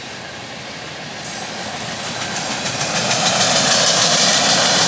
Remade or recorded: recorded